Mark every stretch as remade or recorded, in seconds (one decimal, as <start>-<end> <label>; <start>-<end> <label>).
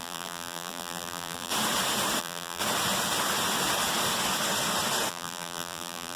0.0-1.5 remade; 1.5-2.2 recorded; 2.2-2.6 remade; 2.6-5.1 recorded; 5.1-6.2 remade